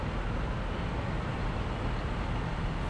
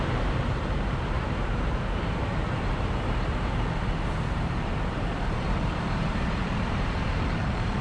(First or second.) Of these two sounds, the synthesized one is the second